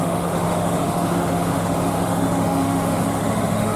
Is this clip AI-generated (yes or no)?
yes